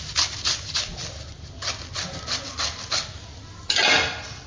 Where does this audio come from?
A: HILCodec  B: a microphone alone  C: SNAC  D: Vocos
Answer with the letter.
B